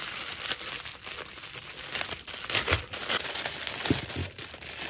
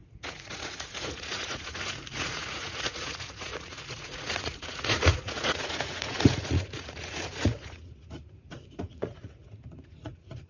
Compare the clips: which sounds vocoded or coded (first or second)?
second